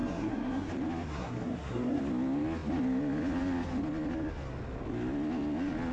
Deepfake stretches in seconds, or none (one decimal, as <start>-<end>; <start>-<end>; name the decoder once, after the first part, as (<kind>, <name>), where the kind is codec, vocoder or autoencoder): 0.0-0.7 (codec, SNAC); 1.1-2.0